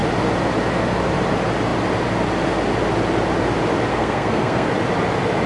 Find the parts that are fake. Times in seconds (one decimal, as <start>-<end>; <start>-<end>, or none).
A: 3.9-4.7